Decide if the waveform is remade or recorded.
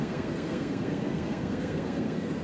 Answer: remade